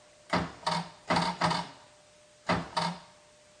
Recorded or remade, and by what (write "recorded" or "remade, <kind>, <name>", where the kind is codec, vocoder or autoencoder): recorded